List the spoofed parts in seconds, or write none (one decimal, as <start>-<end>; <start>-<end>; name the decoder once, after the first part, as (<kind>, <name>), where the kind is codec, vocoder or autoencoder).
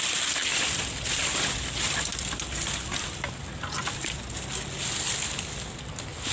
none